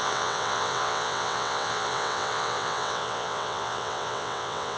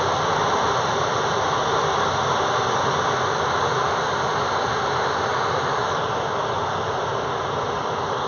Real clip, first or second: second